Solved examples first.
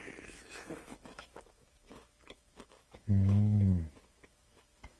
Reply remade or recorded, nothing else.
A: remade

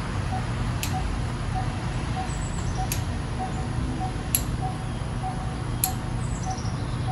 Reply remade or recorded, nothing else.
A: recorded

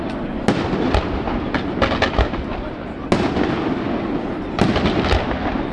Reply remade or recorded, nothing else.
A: recorded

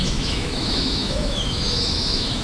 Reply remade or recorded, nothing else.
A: remade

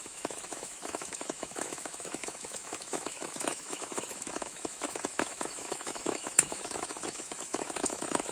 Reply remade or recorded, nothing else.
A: remade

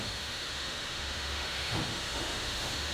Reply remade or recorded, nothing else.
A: remade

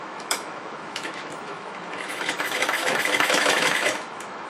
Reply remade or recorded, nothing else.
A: remade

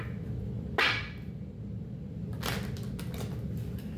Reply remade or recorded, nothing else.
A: recorded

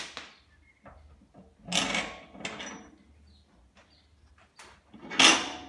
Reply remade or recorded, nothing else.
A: recorded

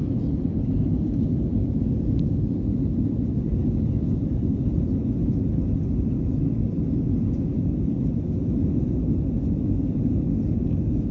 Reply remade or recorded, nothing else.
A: recorded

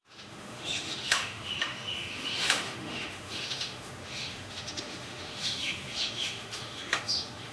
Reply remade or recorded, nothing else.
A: remade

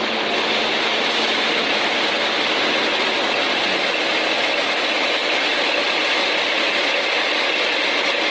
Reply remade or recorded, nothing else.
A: recorded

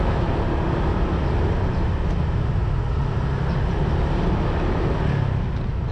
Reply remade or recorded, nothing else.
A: recorded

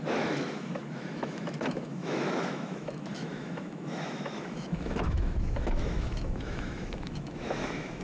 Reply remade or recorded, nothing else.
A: remade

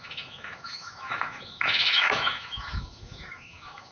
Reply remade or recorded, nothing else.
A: remade